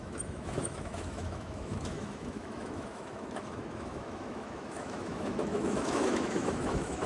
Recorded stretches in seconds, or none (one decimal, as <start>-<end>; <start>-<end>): none